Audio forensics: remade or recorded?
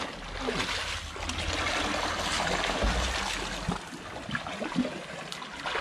recorded